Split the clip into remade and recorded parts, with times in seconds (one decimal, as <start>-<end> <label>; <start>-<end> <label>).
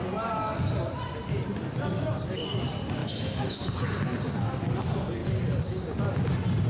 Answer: 0.0-3.0 recorded; 3.0-3.9 remade; 3.9-6.7 recorded